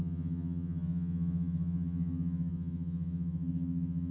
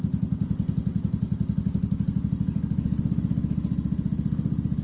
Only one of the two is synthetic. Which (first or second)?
first